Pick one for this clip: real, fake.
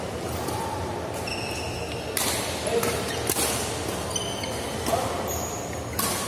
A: real